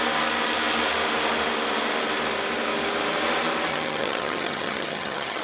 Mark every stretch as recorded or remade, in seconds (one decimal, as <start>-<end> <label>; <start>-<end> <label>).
0.0-3.7 recorded; 3.7-5.4 remade